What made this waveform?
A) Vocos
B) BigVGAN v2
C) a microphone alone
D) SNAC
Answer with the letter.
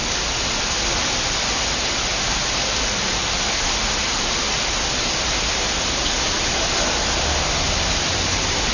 C